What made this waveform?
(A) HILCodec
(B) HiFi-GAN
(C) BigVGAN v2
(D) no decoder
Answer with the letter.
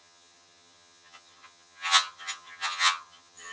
B